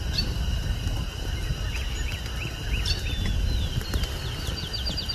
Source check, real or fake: real